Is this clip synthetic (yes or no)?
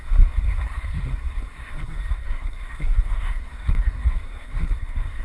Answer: yes